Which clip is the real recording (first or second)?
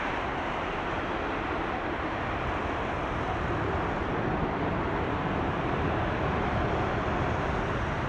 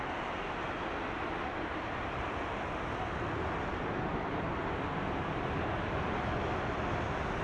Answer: second